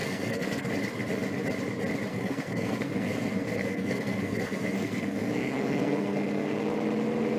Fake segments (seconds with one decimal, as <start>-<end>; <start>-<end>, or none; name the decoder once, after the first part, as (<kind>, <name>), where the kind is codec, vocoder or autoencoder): 0.0-0.7 (codec, SNAC); 2.1-6.5